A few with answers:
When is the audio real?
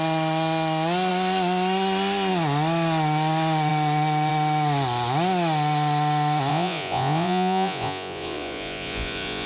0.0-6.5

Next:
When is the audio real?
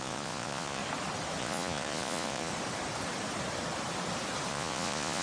0.8-1.4; 2.5-4.5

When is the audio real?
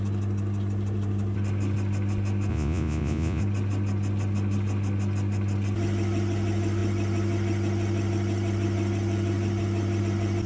0.0-2.5; 3.4-10.5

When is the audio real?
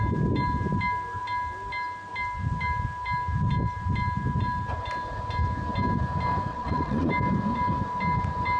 0.0-6.5; 7.1-8.6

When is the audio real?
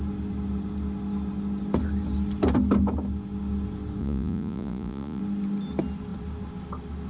0.0-4.0; 5.2-7.1